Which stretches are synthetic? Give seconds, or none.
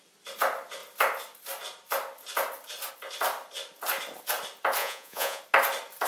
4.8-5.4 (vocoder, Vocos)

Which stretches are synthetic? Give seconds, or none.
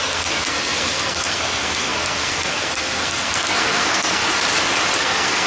0.0-4.2 (codec, SNAC); 5.0-5.5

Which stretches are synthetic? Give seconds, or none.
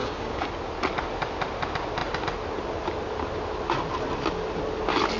0.0-0.5 (codec, DAC)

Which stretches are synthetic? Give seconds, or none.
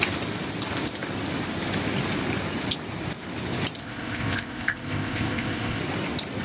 3.8-5.8 (codec, ZipCodec)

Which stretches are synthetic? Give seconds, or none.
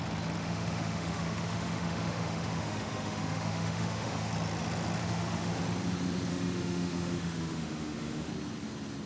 0.4-4.3 (autoencoder, DAC-VAE); 5.0-5.6; 6.3-8.3